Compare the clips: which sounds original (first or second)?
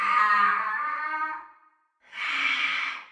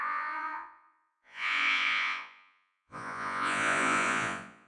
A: first